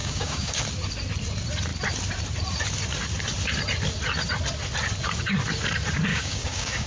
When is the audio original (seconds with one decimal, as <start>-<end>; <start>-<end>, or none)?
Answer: 0.6-6.1